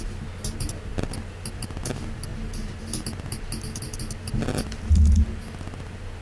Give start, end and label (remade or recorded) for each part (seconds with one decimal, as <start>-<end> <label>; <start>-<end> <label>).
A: 0.0-6.2 recorded